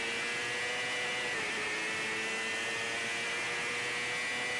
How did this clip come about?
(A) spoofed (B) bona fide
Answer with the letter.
B